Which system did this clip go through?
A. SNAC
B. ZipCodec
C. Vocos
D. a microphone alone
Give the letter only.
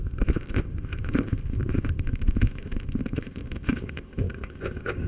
B